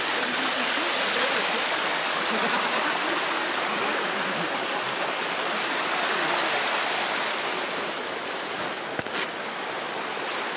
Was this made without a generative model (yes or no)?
yes